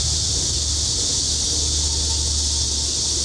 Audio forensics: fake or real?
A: real